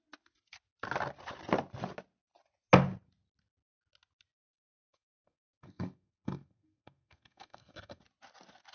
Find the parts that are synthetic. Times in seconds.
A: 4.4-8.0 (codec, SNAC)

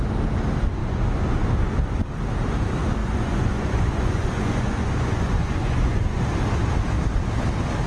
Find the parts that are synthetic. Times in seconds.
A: 0.8-1.5 (vocoder, Vocos); 3.0-6.2

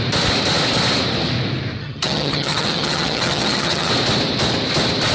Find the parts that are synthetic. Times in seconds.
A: 1.8-3.9 (vocoder, HiFi-GAN)

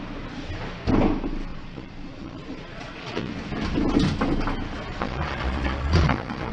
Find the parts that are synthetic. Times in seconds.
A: 1.5-3.3 (vocoder, Vocos); 4.9-6.5

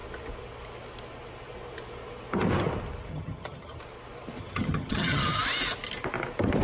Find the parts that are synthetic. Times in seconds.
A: 3.1-3.8 (vocoder, HiFi-GAN); 4.4-5.4